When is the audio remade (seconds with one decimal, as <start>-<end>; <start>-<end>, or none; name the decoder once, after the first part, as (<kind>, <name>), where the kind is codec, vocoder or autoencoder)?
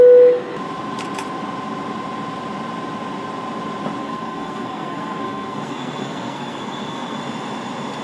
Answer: 4.0-7.2 (codec, SNAC)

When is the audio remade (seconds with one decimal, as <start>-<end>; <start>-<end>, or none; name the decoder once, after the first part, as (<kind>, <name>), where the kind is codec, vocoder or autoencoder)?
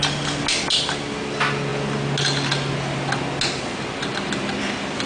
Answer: none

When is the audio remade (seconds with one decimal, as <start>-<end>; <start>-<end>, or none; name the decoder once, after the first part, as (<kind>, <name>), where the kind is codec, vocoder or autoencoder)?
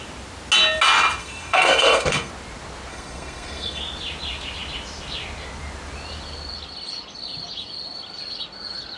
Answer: 1.2-2.3 (codec, SNAC); 2.9-3.8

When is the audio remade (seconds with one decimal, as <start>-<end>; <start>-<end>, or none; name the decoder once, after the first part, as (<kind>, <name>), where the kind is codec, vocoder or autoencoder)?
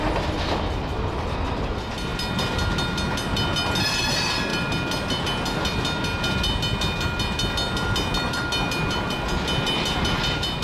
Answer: none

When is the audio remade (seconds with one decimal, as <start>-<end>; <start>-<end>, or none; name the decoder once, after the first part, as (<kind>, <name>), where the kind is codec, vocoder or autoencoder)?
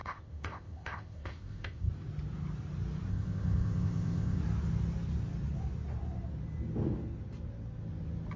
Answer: 0.0-1.9 (codec, ZipCodec); 3.1-4.4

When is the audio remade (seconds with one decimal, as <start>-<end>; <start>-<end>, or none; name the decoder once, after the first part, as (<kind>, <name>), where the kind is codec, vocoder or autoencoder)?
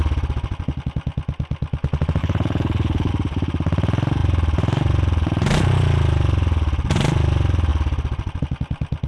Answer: 2.2-3.1 (codec, HILCodec)